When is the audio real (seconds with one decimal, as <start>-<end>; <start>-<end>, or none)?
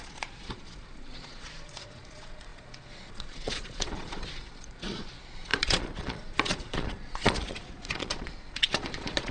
none